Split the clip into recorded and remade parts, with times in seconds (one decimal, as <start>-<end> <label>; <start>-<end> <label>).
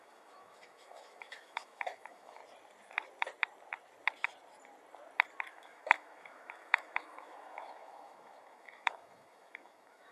0.0-2.4 remade; 2.4-5.5 recorded; 5.5-10.1 remade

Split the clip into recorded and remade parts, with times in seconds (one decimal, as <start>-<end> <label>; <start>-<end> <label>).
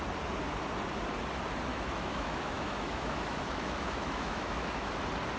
0.0-1.7 recorded; 1.7-4.9 remade; 4.9-5.4 recorded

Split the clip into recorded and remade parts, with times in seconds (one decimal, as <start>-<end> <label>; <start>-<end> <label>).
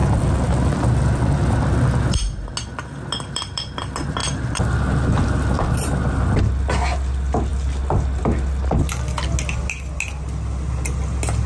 0.0-11.5 recorded